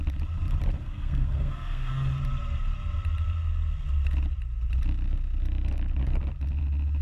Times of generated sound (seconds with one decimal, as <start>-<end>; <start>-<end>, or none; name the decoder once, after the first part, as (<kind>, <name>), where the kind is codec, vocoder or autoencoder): 0.8-1.9 (codec, SNAC)